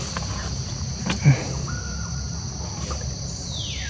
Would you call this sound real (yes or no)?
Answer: yes